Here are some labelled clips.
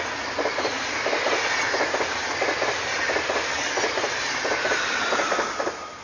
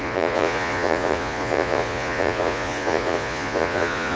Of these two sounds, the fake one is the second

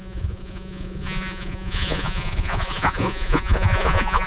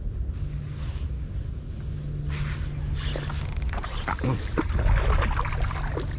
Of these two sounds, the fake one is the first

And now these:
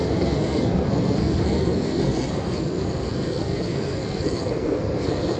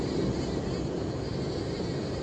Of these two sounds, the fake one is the first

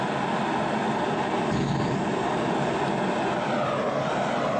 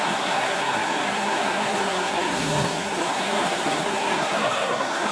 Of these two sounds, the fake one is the second